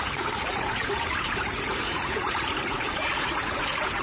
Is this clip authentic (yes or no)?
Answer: no